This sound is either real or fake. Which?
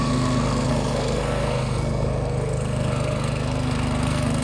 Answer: fake